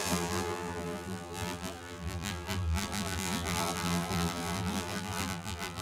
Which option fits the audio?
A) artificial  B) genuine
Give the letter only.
A